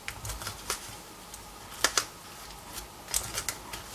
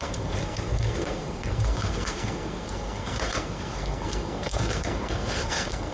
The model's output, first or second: second